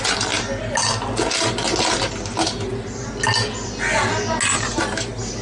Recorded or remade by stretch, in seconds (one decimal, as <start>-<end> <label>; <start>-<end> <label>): 0.0-5.4 recorded